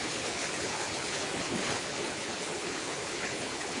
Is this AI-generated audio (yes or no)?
yes